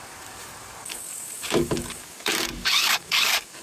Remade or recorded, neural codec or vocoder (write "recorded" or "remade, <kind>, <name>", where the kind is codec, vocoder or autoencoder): remade, codec, DAC